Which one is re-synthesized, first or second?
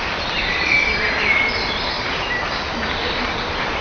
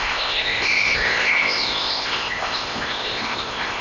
second